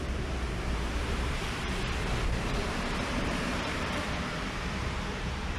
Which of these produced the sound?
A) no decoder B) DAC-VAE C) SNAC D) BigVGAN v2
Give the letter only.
D